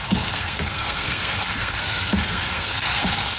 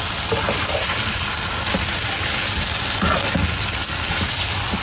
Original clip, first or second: second